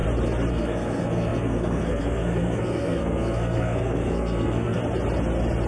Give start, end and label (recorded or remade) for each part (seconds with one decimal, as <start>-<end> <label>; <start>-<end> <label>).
0.0-0.5 recorded; 0.5-4.8 remade; 4.8-5.7 recorded